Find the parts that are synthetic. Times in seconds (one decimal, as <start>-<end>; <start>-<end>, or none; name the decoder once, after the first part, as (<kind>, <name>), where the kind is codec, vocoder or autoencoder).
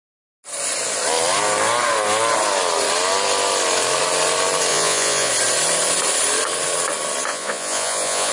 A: 4.7-5.3 (vocoder, Vocos); 7.3-8.3